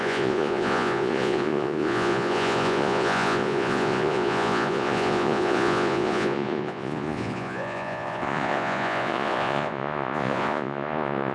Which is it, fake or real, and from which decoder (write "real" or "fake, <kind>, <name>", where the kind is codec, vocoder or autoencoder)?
fake, vocoder, Vocos